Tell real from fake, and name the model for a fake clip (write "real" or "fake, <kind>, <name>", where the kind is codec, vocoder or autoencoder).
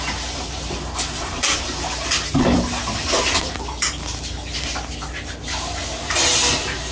real